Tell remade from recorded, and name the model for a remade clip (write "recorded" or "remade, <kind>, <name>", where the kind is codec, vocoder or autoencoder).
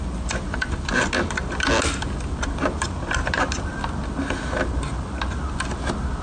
recorded